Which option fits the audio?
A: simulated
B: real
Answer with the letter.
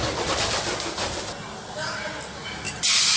B